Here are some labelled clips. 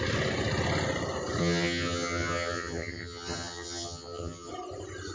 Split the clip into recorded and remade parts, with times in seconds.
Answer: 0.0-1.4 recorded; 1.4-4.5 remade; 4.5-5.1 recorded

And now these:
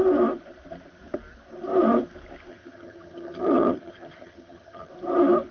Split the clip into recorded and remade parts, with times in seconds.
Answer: 0.0-2.5 recorded; 2.5-4.9 remade; 4.9-5.5 recorded

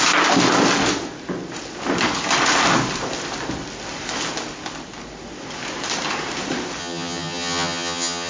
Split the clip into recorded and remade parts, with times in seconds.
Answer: 0.0-6.8 recorded; 6.8-8.3 remade